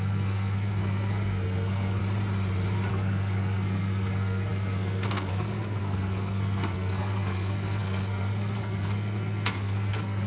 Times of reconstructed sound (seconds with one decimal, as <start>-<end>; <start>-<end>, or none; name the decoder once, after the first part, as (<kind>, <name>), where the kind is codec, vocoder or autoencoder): 0.0-2.0 (codec, SNAC); 2.9-10.3